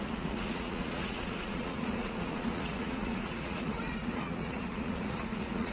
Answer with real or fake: fake